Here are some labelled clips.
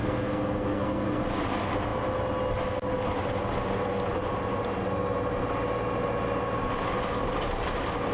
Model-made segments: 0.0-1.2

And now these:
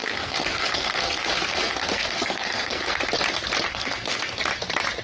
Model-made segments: 0.0-3.0; 3.7-4.4

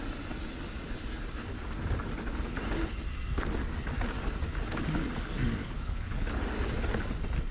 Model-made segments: 5.6-6.4

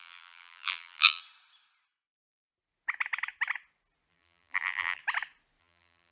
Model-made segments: 0.0-1.2; 4.1-5.0; 5.6-6.1

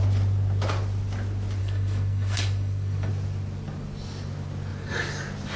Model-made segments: 1.6-3.1